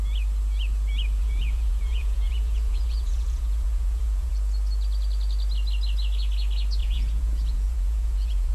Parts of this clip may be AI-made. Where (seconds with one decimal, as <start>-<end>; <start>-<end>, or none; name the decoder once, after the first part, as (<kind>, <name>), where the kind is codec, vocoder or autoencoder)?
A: 1.2-4.3 (vocoder, Vocos); 6.8-8.5